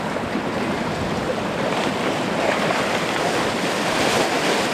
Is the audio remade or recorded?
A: recorded